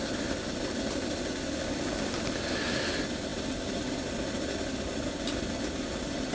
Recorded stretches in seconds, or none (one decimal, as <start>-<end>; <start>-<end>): 0.0-6.3